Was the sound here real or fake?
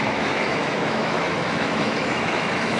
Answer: fake